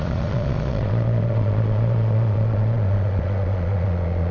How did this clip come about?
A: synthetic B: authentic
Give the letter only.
A